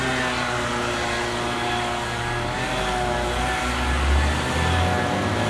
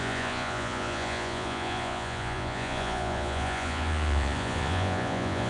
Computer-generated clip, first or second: second